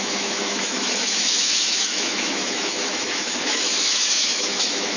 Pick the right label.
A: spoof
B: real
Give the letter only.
A